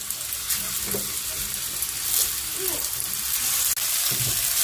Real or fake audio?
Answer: real